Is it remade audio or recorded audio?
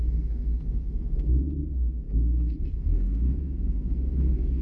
remade